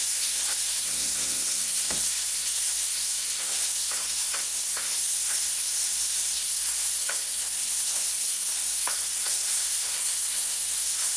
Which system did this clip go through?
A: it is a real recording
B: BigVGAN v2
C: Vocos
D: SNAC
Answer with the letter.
D